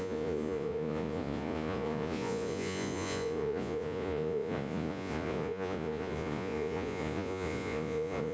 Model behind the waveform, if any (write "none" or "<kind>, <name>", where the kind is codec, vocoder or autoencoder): vocoder, Vocos